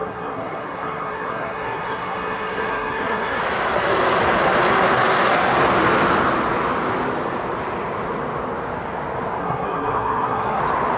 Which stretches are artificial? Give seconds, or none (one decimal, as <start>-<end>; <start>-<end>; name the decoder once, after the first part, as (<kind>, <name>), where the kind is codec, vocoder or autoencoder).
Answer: 0.0-3.4 (codec, SNAC); 9.4-10.6